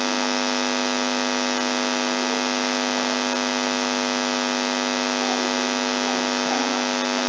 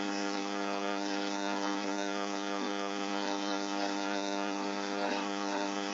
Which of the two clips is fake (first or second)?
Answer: second